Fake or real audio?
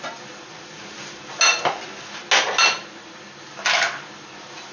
real